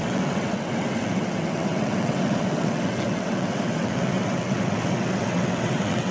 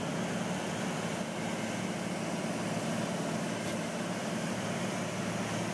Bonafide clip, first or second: second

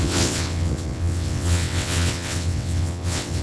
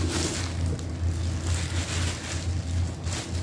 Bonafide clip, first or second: second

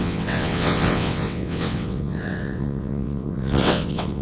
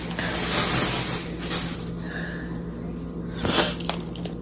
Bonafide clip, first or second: second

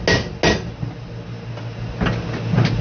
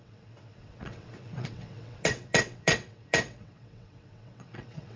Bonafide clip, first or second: first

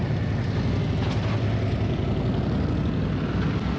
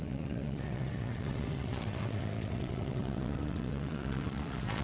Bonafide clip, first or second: first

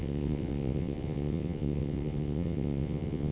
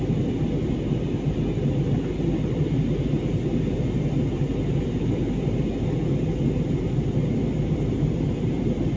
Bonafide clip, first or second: second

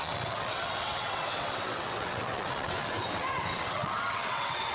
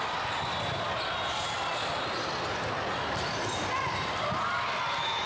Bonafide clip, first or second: second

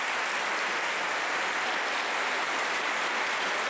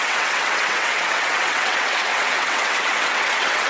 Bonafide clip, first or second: first